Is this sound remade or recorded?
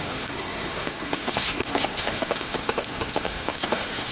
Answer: remade